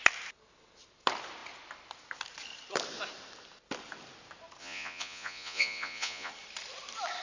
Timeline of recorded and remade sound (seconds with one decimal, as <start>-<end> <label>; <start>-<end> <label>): 0.0-4.6 recorded; 4.6-6.3 remade; 6.3-7.2 recorded